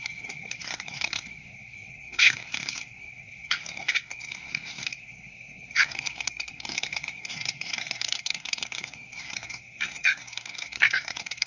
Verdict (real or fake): fake